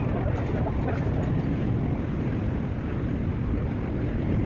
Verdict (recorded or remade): recorded